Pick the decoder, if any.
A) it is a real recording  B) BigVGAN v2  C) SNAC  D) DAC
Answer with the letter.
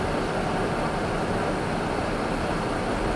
A